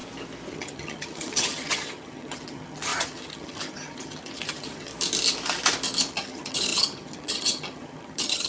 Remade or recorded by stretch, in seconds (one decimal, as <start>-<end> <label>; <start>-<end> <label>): 0.0-0.5 recorded; 0.5-4.9 remade; 4.9-6.1 recorded; 6.1-8.5 remade